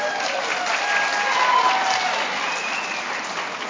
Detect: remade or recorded recorded